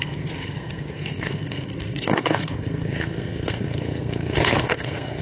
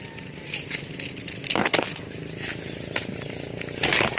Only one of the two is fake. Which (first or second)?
first